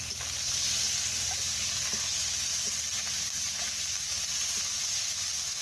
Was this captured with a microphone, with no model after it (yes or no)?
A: yes